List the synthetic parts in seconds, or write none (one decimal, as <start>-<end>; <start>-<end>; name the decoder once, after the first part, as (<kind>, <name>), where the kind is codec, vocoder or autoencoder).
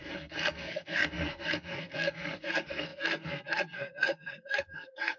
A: 0.0-5.2 (codec, SNAC)